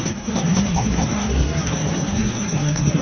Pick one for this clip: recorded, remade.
remade